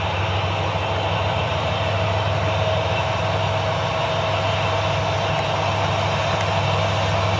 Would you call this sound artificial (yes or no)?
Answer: no